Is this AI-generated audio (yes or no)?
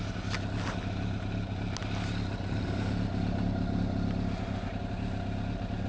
no